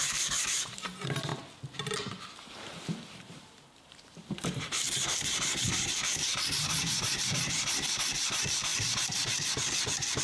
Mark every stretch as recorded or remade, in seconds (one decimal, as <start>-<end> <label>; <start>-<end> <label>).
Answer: 0.0-1.3 remade; 1.3-2.3 recorded; 2.3-10.2 remade